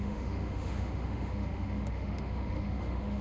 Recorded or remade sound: remade